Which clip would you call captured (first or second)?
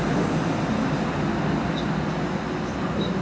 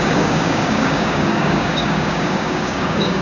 first